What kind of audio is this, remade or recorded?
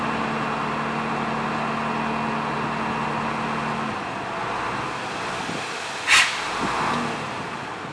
recorded